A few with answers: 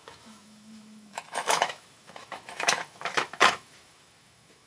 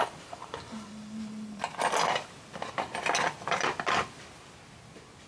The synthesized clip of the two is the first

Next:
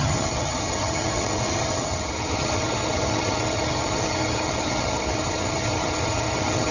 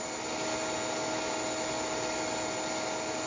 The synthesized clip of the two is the first